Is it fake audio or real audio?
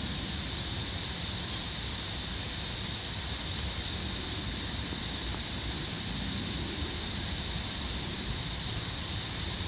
fake